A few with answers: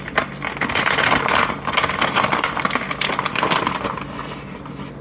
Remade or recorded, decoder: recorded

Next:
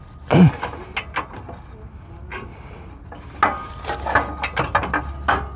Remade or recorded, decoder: recorded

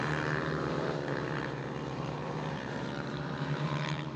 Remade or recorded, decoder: remade, vocoder, BigVGAN v2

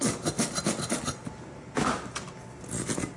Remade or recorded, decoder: recorded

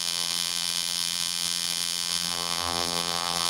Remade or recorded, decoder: remade, vocoder, BigVGAN v2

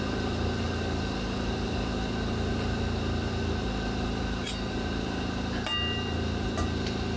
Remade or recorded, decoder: recorded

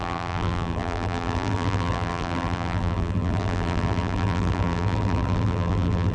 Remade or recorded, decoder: remade, vocoder, BigVGAN v2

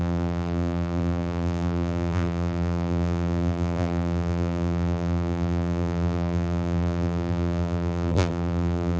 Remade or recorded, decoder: remade, vocoder, BigVGAN v2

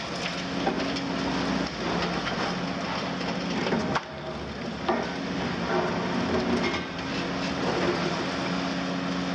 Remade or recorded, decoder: recorded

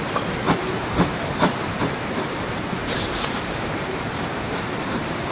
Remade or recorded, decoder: remade, vocoder, BigVGAN v2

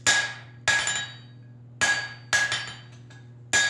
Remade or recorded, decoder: recorded